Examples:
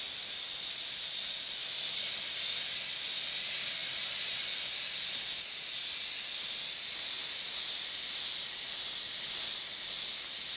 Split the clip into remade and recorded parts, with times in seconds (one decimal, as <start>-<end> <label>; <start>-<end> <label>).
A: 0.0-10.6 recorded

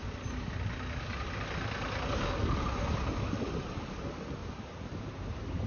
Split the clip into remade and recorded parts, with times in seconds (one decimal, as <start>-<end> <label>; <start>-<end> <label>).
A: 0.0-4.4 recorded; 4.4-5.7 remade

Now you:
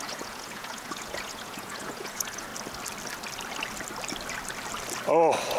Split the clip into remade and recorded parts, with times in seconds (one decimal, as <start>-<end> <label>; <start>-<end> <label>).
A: 0.0-2.5 remade; 2.5-5.6 recorded

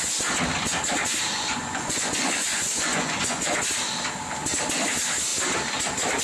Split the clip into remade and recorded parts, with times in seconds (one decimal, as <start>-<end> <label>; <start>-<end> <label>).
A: 0.0-1.3 recorded; 1.3-3.6 remade; 3.6-6.2 recorded